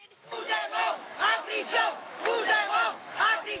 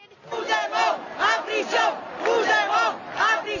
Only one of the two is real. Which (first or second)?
second